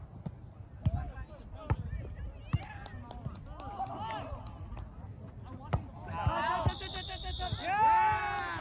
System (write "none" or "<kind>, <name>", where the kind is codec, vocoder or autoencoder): none